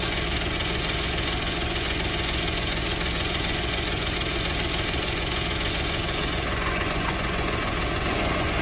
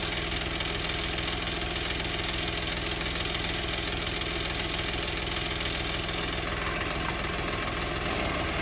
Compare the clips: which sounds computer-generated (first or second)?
first